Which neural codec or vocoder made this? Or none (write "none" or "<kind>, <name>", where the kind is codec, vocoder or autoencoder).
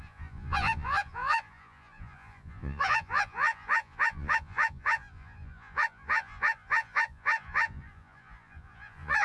vocoder, Vocos